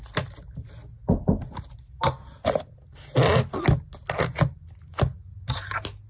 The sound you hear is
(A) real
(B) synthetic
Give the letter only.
A